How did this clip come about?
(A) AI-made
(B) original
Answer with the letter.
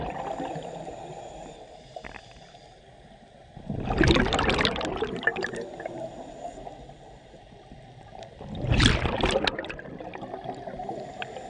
B